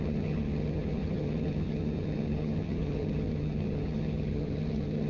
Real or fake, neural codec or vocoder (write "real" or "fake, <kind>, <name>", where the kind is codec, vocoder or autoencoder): fake, vocoder, HiFi-GAN